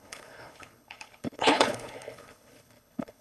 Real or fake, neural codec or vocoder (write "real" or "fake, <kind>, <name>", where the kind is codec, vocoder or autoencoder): fake, codec, HILCodec